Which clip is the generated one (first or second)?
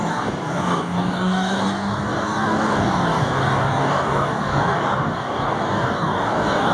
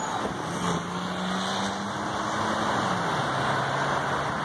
first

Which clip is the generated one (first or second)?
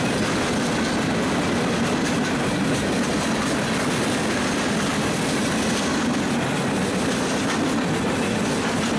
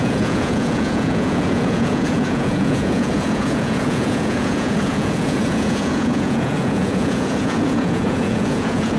second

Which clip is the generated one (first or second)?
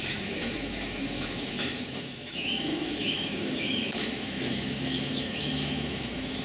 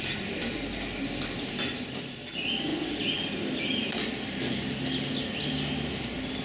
first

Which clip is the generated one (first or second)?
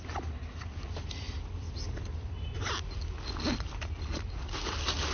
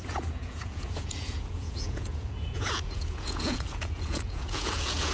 second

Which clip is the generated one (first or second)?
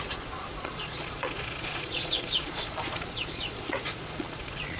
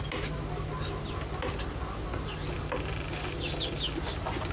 first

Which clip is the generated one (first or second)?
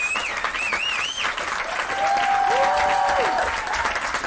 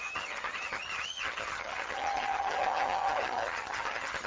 second